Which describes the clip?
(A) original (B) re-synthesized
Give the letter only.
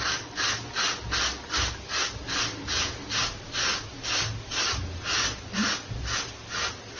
A